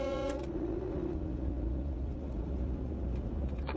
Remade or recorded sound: remade